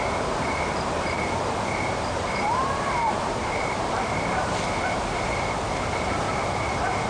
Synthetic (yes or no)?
yes